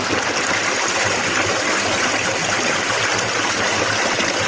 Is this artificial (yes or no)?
no